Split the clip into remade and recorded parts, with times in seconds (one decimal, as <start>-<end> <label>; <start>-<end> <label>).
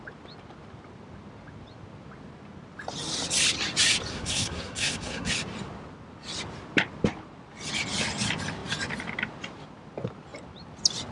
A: 0.0-4.1 recorded; 4.1-5.3 remade; 5.3-11.1 recorded